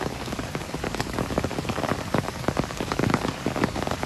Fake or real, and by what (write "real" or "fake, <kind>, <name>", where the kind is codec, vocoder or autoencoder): fake, codec, DAC